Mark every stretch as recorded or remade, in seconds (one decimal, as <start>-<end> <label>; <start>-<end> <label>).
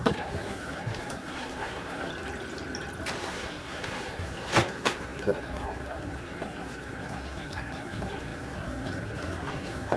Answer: 0.0-2.1 remade; 2.1-3.2 recorded; 3.2-10.0 remade